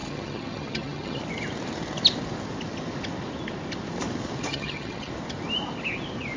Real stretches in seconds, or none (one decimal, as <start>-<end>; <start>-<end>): 1.2-4.5; 5.1-6.4